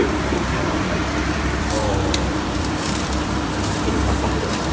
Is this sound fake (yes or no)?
yes